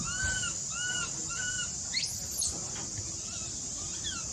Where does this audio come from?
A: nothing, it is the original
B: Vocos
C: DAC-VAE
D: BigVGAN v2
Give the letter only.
A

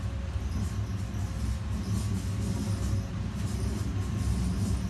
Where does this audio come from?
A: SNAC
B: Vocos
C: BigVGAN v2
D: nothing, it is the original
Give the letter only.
D